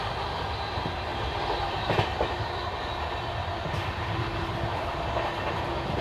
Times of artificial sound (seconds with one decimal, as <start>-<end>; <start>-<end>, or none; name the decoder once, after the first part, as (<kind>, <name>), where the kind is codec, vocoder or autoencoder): 1.1-2.3 (vocoder, BigVGAN v2); 3.4-6.0